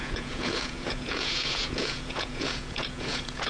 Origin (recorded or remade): remade